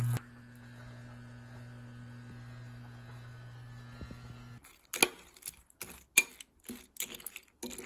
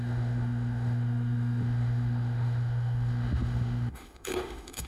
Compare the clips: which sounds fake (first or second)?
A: second